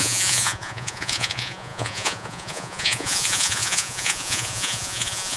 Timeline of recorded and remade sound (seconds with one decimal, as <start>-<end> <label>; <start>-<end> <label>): 0.0-5.4 remade